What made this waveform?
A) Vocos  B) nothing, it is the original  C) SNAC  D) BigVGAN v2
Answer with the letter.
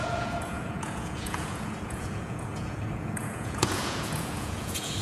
A